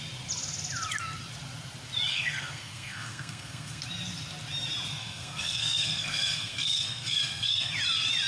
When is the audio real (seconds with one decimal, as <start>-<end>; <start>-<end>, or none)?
0.0-2.1; 3.8-4.9; 7.7-8.3